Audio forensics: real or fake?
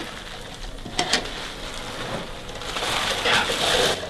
real